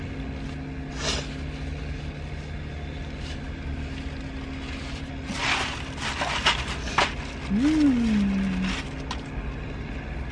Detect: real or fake real